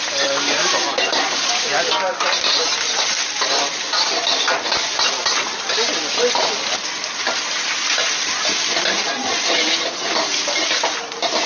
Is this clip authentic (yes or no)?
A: yes